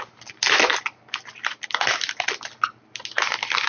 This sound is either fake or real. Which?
real